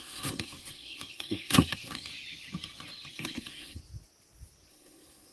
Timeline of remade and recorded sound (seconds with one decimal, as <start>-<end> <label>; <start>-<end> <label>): 0.0-2.1 remade; 2.1-3.1 recorded; 3.1-3.8 remade; 3.8-4.7 recorded; 4.7-5.3 remade